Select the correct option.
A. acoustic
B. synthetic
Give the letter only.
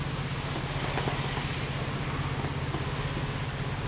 A